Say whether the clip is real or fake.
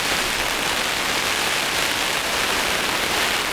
real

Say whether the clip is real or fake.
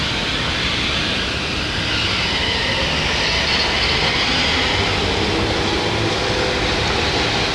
real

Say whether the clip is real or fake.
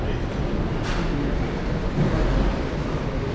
real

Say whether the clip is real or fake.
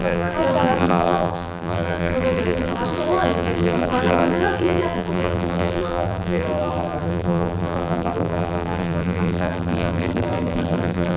fake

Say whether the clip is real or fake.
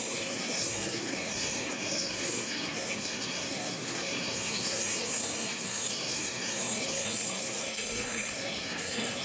fake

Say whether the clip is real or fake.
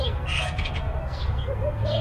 fake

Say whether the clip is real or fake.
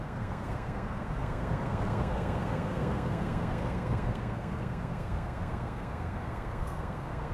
fake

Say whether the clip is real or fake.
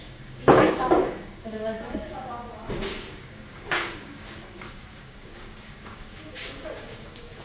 fake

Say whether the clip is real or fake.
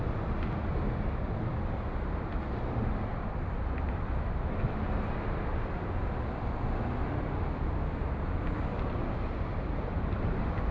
real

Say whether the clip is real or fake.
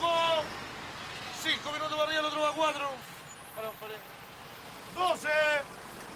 real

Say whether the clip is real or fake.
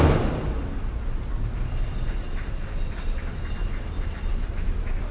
real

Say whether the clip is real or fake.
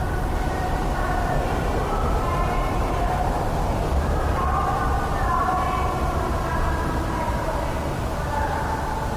fake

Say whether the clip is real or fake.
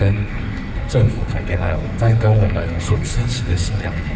fake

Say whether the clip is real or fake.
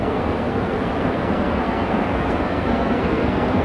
fake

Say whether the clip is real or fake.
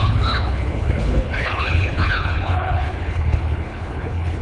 fake